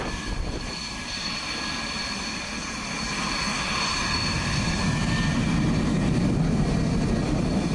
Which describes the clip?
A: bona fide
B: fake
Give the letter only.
A